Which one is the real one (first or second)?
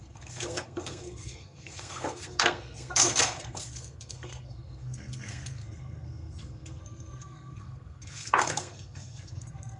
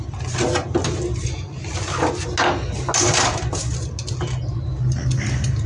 second